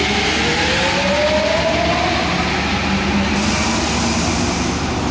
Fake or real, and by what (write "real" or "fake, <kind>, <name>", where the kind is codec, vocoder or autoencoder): real